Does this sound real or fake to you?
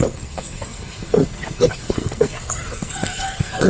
fake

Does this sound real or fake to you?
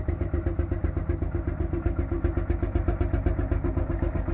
real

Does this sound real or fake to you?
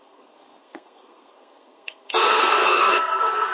fake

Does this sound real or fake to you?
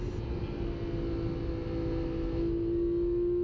real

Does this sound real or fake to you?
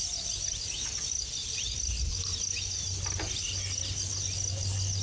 real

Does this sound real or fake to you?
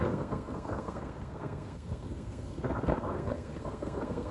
fake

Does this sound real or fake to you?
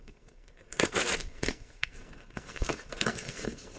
fake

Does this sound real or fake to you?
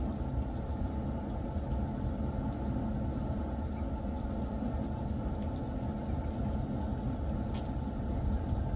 real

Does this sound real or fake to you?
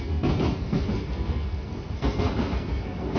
fake